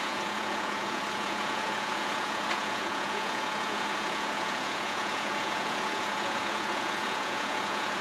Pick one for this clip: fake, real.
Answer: fake